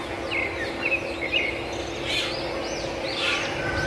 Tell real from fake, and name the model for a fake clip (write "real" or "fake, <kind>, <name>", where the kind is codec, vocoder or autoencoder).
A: real